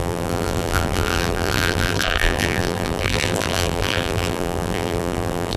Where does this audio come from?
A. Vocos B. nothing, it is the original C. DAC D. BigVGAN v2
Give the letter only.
D